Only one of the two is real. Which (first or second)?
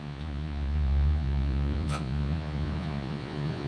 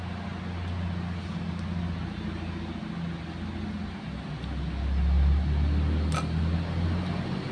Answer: second